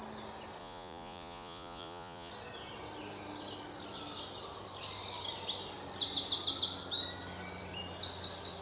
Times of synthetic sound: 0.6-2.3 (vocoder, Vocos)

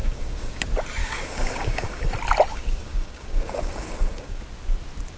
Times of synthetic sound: 0.0-0.6 (codec, DAC); 1.0-2.0; 2.5-4.4

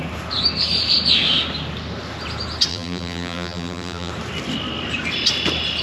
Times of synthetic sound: 2.7-4.1 (vocoder, BigVGAN v2)

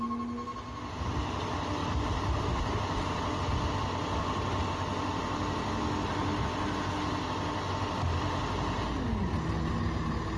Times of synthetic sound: none

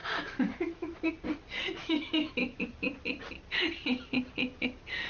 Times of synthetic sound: 0.0-1.1 (autoencoder, DAC-VAE); 1.8-2.6

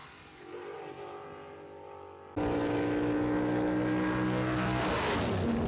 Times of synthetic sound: none